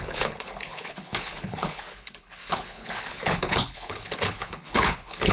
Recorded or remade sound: remade